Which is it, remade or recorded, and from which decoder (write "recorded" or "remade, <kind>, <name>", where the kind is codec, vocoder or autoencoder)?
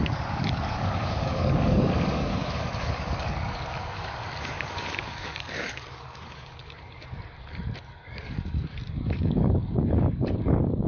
remade, codec, DAC